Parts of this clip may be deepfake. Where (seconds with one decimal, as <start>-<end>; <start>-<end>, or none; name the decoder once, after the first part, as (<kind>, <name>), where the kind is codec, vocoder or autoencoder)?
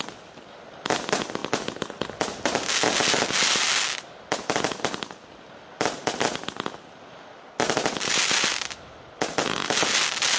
none